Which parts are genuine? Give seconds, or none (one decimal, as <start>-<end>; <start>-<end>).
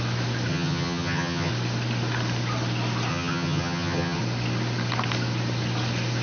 0.0-0.5; 1.5-3.1; 4.2-6.2